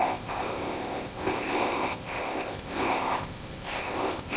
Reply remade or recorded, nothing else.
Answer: remade